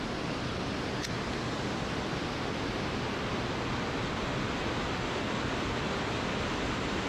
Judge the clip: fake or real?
real